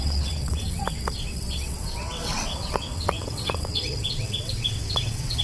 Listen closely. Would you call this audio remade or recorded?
remade